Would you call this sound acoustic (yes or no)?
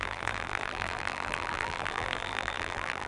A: no